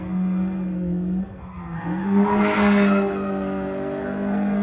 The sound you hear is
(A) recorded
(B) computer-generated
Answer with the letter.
B